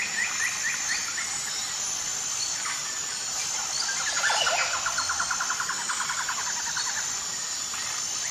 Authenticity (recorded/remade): recorded